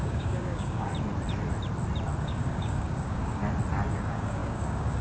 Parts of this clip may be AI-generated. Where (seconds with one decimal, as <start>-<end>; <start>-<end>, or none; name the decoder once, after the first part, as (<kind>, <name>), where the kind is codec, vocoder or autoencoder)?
0.0-0.9 (codec, DAC); 2.2-3.4; 3.9-5.0